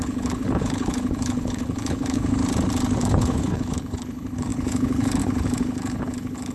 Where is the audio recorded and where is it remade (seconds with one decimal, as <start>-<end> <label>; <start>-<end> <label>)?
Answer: 0.0-2.4 remade; 2.4-3.0 recorded; 3.0-6.5 remade